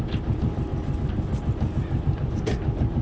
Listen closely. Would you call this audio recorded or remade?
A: recorded